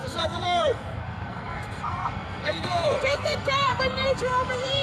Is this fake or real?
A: fake